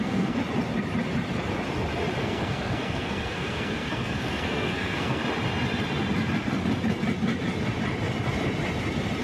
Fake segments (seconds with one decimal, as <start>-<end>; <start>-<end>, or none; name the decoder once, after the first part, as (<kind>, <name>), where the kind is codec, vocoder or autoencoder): 0.0-0.4 (codec, SNAC); 2.2-5.2